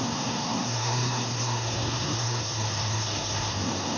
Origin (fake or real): fake